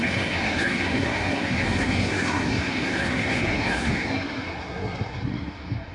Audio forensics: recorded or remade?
remade